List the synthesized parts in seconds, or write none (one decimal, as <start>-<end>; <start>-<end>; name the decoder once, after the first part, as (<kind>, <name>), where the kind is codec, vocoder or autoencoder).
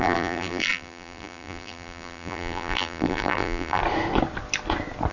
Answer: 0.0-3.8 (vocoder, BigVGAN v2)